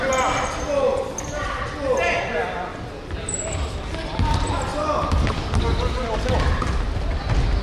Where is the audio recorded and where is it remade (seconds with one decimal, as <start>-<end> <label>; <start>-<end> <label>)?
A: 0.0-7.6 recorded